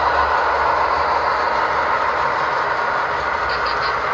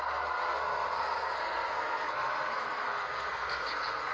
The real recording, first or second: first